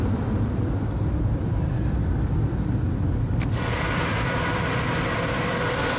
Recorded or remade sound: remade